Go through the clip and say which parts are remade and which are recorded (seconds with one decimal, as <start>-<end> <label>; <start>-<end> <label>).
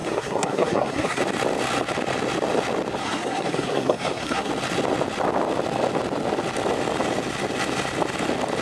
0.0-1.2 remade; 1.2-3.0 recorded; 3.0-4.5 remade; 4.5-8.6 recorded